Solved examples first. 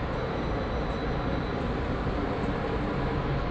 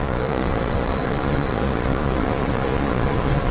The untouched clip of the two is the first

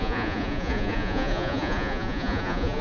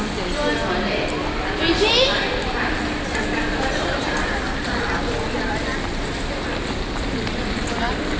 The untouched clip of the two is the second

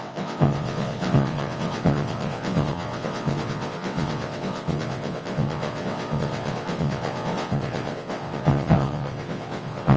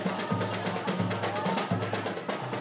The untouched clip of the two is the second